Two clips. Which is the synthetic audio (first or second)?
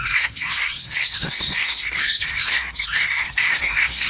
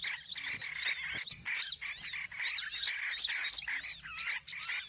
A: first